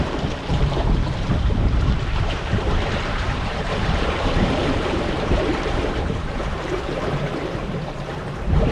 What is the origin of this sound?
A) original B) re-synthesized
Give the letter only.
B